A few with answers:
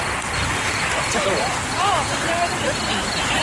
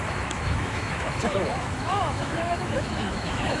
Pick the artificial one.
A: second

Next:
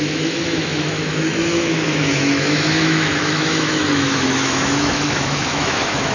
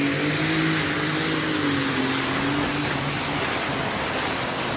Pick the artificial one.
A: first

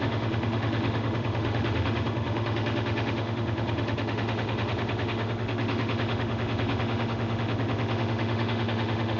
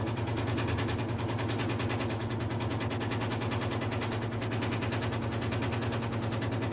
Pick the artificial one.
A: first